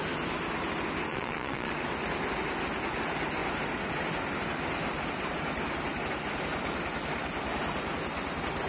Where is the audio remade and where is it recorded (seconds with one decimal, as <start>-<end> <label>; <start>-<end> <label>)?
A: 0.0-1.1 recorded; 1.1-1.7 remade; 1.7-8.7 recorded